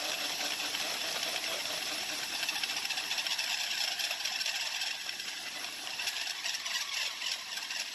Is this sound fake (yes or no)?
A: yes